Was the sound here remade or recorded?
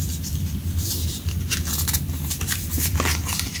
recorded